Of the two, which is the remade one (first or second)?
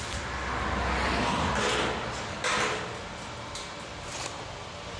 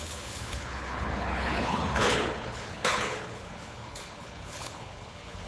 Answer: second